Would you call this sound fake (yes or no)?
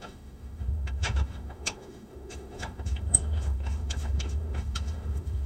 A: yes